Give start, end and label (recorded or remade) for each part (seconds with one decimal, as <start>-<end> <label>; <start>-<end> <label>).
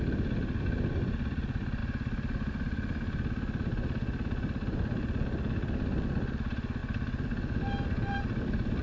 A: 0.0-8.8 recorded